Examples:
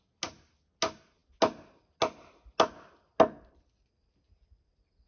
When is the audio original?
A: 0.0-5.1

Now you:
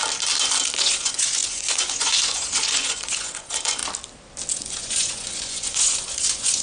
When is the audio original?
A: 0.0-0.8; 3.8-4.5

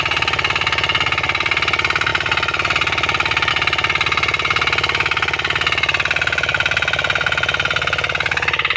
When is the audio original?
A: 0.0-8.8

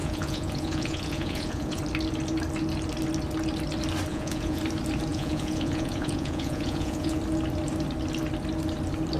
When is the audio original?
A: 1.8-4.1; 4.6-5.1; 7.2-9.2

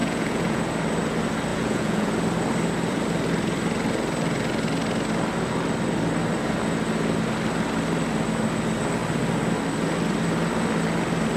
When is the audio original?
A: 0.6-1.5; 2.1-11.4